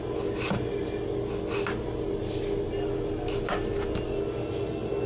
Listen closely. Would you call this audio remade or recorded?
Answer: recorded